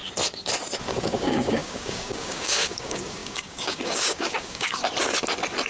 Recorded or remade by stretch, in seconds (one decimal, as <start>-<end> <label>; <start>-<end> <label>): 0.0-1.0 recorded; 1.0-4.8 remade; 4.8-5.7 recorded